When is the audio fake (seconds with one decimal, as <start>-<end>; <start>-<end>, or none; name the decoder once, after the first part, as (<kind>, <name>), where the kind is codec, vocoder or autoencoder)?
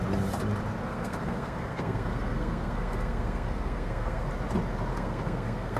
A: 0.8-4.3 (codec, SNAC); 4.9-5.8